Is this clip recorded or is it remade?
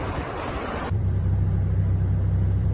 remade